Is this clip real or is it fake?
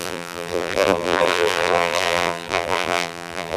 fake